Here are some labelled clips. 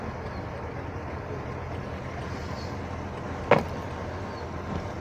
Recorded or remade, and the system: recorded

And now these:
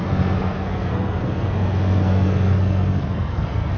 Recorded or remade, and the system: remade, codec, SNAC